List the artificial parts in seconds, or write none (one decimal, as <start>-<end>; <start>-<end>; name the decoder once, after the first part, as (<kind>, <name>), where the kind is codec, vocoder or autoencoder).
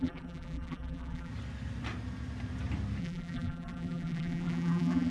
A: 0.0-1.3 (vocoder, BigVGAN v2); 3.0-5.1